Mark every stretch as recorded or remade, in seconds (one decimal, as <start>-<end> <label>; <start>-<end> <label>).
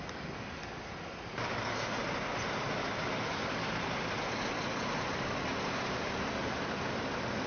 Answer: 0.0-5.5 recorded; 5.5-6.6 remade; 6.6-7.5 recorded